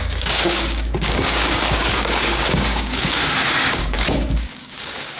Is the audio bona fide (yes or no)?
no